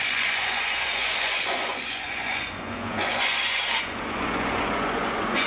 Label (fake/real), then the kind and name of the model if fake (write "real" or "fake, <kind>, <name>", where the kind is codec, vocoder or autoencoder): fake, vocoder, Vocos